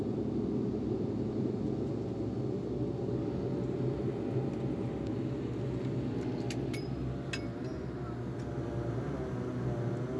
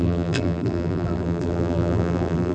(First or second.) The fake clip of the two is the second